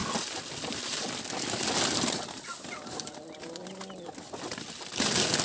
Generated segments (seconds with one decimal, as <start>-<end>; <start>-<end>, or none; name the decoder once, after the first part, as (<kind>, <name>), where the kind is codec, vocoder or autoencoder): none